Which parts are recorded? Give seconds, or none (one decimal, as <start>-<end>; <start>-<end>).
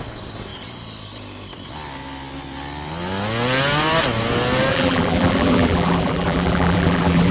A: 0.0-4.7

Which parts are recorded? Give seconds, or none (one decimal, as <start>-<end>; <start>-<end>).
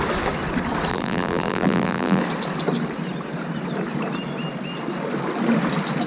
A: 0.0-0.9; 2.2-6.1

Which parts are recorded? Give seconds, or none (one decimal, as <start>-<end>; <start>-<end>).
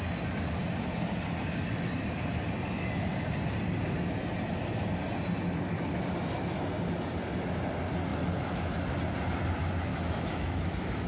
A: 0.0-8.1; 8.9-9.9